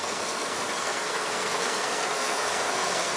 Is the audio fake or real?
fake